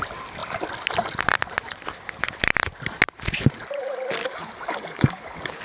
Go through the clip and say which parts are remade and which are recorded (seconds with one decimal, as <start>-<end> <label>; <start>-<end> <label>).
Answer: 0.0-4.2 recorded; 4.2-5.6 remade